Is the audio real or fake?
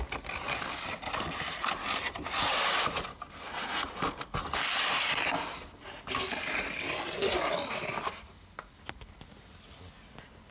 real